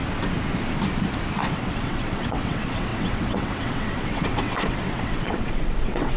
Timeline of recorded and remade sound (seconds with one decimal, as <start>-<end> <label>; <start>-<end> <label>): 0.0-1.4 recorded; 1.4-6.2 remade